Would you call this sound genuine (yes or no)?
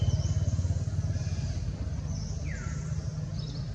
yes